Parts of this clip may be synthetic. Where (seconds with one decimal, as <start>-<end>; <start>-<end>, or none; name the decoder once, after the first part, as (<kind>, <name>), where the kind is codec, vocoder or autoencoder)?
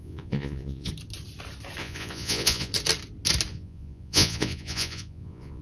0.0-0.9 (vocoder, Vocos); 1.8-2.7; 3.5-5.6